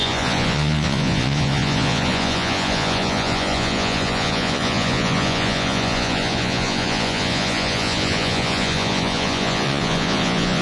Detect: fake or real fake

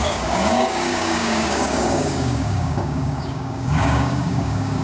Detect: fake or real fake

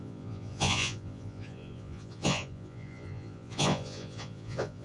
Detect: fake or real fake